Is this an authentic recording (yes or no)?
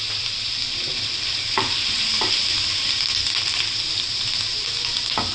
yes